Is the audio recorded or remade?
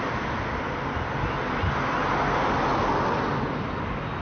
recorded